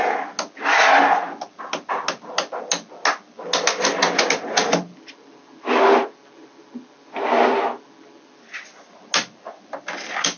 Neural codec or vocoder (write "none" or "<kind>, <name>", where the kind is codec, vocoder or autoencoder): none